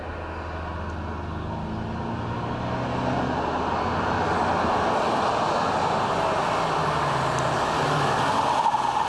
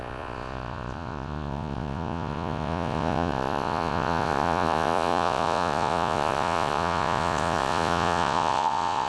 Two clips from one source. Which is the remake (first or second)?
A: second